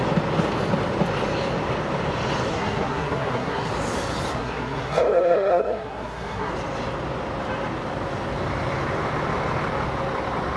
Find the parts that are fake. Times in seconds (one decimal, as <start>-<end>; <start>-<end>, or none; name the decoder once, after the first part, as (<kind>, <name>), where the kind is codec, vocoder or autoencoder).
2.5-3.7 (codec, SNAC); 4.3-6.5